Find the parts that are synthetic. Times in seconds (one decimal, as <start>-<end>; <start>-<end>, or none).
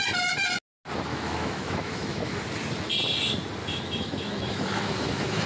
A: 1.1-2.4; 3.6-5.5